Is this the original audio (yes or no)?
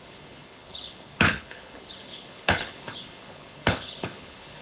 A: no